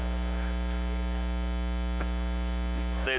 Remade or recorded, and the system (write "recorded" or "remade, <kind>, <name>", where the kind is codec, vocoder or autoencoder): recorded